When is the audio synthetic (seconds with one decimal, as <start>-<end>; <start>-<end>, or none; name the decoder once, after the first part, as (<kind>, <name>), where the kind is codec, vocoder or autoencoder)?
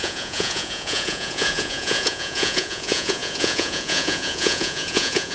0.0-5.3 (vocoder, Vocos)